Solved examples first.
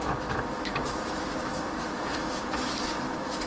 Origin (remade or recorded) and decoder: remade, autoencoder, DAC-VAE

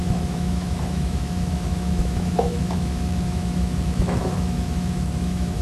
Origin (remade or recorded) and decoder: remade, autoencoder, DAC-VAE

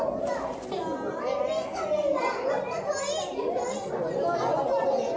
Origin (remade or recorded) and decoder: recorded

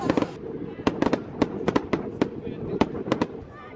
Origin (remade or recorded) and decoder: recorded